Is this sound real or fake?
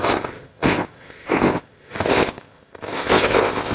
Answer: fake